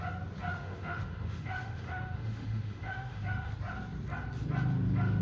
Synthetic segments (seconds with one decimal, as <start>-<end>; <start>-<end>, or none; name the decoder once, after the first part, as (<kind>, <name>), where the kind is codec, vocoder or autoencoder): 0.5-3.5 (autoencoder, DAC-VAE)